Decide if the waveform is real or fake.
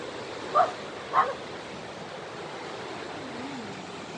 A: real